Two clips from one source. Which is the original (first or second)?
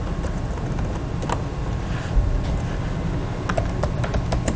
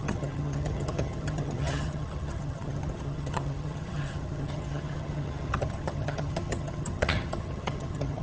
first